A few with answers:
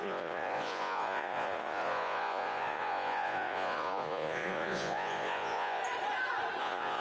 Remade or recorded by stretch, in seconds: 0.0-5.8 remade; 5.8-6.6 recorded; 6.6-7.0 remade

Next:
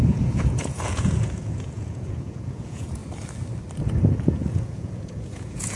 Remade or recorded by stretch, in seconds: 0.0-3.0 remade; 3.0-4.1 recorded; 4.1-5.8 remade

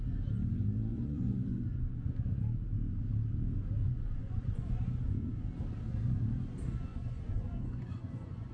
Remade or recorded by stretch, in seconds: 0.0-0.9 recorded; 0.9-2.4 remade; 2.4-3.8 recorded; 3.8-5.3 remade; 5.3-6.9 recorded; 6.9-8.5 remade

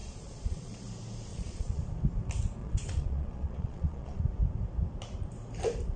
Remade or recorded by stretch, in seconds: 0.0-0.8 remade; 0.8-1.3 recorded; 1.3-1.8 remade; 1.8-2.6 recorded; 2.6-4.2 remade; 4.2-6.0 recorded

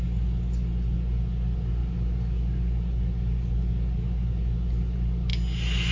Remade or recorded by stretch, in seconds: 0.0-5.9 recorded

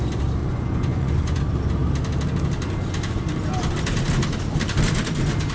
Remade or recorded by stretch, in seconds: 0.0-0.4 recorded; 0.4-1.4 remade; 1.4-5.5 recorded

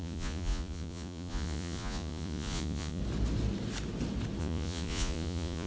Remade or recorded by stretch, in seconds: 0.0-3.0 remade; 3.0-4.4 recorded; 4.4-5.7 remade